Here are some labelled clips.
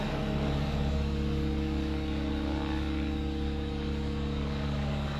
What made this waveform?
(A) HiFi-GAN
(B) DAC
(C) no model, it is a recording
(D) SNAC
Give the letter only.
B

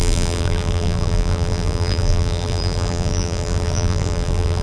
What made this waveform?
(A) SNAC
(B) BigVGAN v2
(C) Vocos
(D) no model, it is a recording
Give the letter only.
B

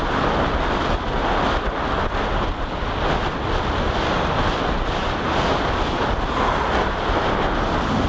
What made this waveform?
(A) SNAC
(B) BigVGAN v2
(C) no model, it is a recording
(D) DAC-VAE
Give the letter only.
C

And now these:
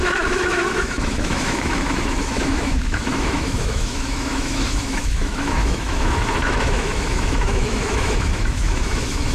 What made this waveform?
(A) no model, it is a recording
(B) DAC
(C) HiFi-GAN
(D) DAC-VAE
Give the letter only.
D